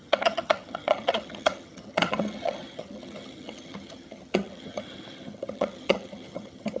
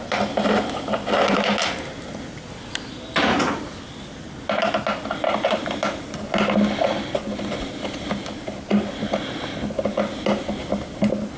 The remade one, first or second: first